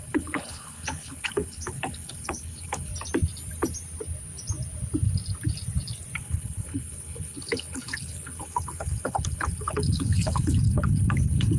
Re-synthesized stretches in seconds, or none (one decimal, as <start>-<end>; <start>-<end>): 0.0-2.9; 6.2-11.6